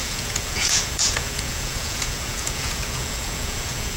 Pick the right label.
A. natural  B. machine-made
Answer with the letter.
B